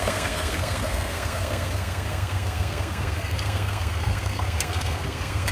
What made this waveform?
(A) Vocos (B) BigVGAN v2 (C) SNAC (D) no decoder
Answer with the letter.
C